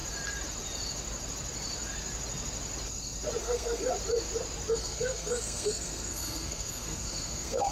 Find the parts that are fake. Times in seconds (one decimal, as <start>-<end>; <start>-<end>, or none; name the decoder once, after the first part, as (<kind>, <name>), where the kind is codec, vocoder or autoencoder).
3.4-3.9 (codec, SNAC); 4.7-7.7